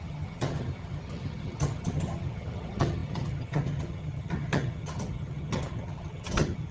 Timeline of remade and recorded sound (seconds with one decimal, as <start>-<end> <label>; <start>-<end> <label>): 0.0-6.7 remade

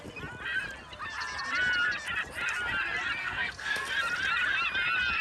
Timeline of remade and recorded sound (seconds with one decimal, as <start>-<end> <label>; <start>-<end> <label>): 0.0-3.2 recorded; 3.2-3.9 remade; 3.9-5.2 recorded

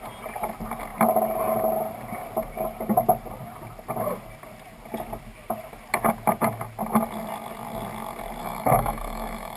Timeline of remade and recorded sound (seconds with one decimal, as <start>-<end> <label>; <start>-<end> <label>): 0.0-8.4 recorded; 8.4-9.6 remade

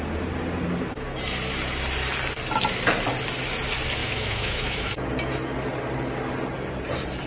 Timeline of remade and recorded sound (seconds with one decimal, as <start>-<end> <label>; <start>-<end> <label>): 0.0-4.0 recorded; 4.0-4.9 remade; 4.9-7.3 recorded

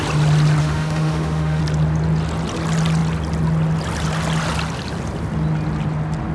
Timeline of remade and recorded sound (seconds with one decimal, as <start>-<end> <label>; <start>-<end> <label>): 0.0-0.6 recorded; 0.6-1.6 remade; 1.6-6.3 recorded

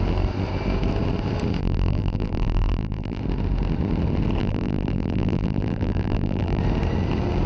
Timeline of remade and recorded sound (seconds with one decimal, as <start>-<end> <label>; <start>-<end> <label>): 0.0-1.6 recorded; 1.6-3.2 remade; 3.2-4.4 recorded; 4.4-6.6 remade; 6.6-7.5 recorded